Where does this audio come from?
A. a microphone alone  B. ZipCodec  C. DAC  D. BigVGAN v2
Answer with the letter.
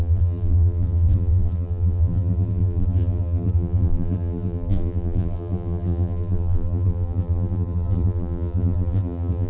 D